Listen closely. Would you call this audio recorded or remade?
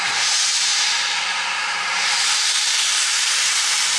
remade